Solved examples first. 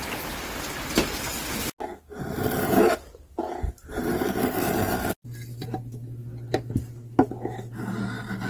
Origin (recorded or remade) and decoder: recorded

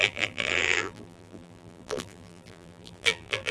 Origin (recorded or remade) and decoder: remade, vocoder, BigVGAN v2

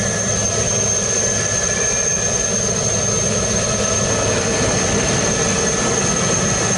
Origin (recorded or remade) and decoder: recorded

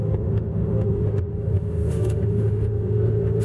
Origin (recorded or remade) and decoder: remade, autoencoder, DAC-VAE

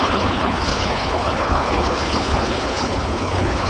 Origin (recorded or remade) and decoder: remade, codec, HILCodec